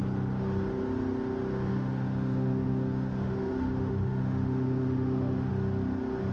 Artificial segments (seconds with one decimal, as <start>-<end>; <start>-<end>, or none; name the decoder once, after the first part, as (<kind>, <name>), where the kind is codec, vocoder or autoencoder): 1.7-5.5 (autoencoder, DAC-VAE)